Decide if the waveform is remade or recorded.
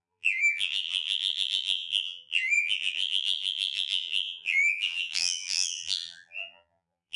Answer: remade